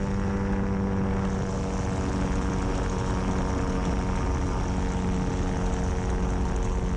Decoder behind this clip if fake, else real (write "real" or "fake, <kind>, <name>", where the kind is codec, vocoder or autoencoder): real